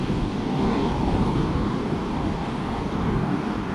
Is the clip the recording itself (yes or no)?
no